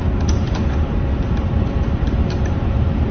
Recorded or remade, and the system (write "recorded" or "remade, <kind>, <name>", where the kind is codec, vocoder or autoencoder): remade, vocoder, BigVGAN v2